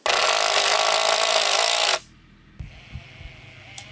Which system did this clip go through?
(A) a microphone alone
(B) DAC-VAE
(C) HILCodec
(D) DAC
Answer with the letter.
A